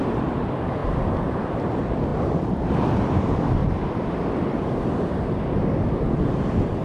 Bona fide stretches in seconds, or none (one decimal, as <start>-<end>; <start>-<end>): 3.6-5.4